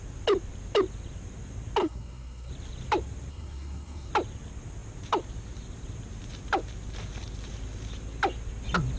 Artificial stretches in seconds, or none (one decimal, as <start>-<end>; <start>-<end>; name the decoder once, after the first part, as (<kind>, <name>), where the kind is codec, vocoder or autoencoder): 1.8-2.5 (codec, SNAC); 3.3-4.1